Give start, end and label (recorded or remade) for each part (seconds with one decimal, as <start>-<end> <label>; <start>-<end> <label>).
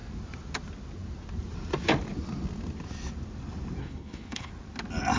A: 0.0-3.8 recorded; 3.8-4.5 remade; 4.5-5.2 recorded